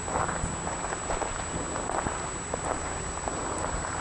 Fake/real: real